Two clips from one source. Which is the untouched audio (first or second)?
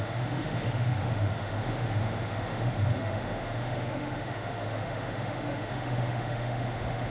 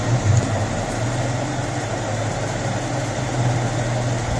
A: second